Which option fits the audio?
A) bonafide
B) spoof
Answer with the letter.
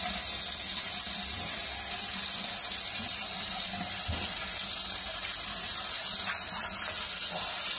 A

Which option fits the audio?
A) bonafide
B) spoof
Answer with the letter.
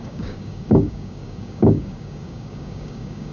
B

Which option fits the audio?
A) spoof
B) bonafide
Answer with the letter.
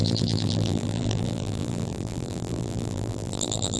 A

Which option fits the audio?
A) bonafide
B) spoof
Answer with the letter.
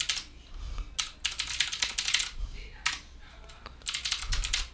A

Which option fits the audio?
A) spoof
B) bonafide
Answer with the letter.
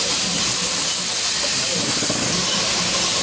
B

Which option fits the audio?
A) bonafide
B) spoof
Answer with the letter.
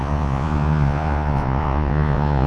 B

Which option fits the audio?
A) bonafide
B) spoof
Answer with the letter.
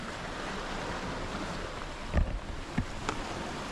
A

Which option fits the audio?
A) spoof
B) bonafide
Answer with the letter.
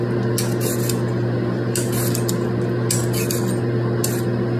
B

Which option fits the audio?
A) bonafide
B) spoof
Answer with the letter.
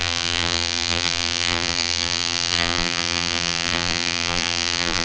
B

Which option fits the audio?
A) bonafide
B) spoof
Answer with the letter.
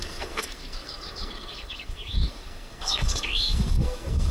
B